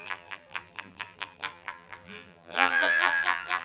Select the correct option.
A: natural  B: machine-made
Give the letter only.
B